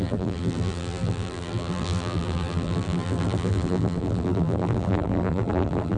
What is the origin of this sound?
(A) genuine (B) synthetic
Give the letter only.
B